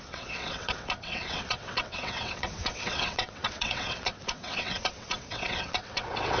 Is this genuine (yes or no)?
no